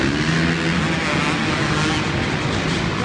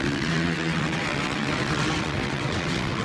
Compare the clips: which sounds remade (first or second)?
second